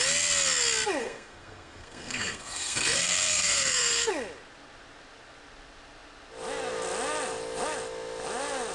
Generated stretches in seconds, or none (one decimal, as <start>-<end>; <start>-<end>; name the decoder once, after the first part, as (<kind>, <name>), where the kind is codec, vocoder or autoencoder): 1.0-4.1 (codec, SNAC)

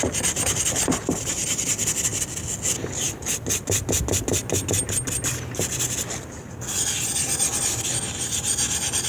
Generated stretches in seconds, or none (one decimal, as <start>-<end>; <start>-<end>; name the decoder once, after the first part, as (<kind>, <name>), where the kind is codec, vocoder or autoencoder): none

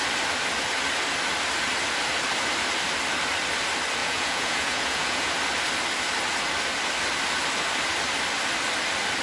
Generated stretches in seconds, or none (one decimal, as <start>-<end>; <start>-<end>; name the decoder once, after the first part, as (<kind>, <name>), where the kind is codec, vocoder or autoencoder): 4.0-5.3 (vocoder, Vocos)

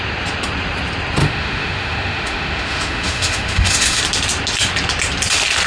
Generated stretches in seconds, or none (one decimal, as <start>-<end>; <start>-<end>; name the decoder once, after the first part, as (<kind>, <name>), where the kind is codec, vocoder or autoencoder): 1.2-4.0 (autoencoder, DAC-VAE)

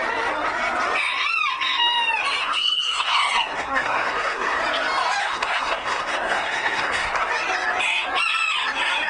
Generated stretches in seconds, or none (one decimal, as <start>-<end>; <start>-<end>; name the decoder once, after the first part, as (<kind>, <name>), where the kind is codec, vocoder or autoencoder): 2.4-4.6 (codec, SNAC); 5.2-7.3

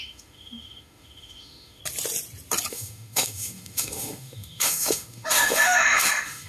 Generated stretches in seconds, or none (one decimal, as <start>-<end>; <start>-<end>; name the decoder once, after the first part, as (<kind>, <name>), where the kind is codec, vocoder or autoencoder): 0.0-1.8 (autoencoder, DAC-VAE); 2.7-6.5

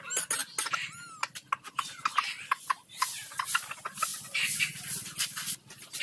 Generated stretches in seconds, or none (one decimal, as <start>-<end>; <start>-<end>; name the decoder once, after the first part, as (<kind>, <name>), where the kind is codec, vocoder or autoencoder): none